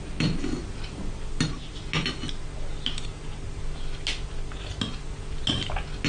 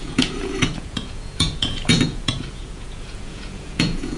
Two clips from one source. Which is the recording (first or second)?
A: first